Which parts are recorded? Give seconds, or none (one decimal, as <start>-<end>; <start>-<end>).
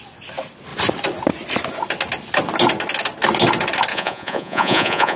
0.0-3.9